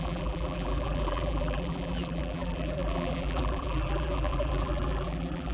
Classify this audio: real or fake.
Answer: fake